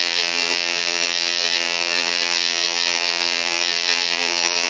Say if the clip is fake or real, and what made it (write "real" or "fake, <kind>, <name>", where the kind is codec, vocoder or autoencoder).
fake, vocoder, BigVGAN v2